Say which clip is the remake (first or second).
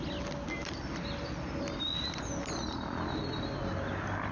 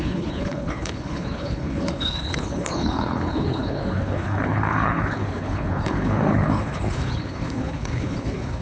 second